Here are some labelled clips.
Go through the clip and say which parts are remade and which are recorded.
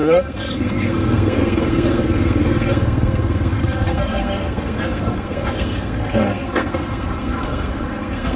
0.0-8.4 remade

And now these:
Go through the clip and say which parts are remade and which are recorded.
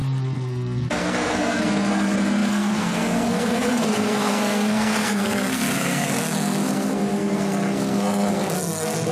0.0-9.1 remade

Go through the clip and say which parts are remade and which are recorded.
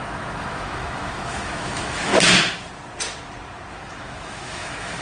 0.0-2.1 remade; 2.1-3.7 recorded; 3.7-5.0 remade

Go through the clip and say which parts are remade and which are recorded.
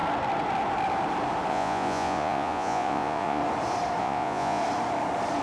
0.0-1.5 recorded; 1.5-3.4 remade; 3.4-4.0 recorded; 4.0-4.6 remade; 4.6-5.4 recorded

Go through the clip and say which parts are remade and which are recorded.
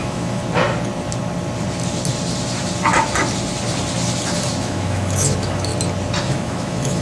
0.0-0.4 remade; 0.4-4.6 recorded; 4.6-5.7 remade; 5.7-6.2 recorded; 6.2-7.0 remade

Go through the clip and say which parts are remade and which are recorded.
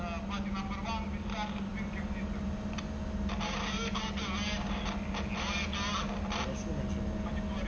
0.0-7.7 recorded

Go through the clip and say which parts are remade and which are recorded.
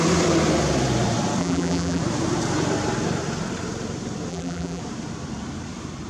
0.0-1.4 recorded; 1.4-2.0 remade; 2.0-4.3 recorded; 4.3-4.8 remade; 4.8-6.1 recorded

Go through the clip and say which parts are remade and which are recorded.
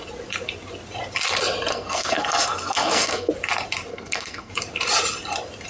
0.0-1.7 recorded; 1.7-3.3 remade; 3.3-3.9 recorded; 3.9-4.5 remade; 4.5-5.7 recorded